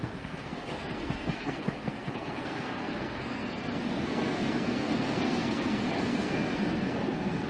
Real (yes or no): no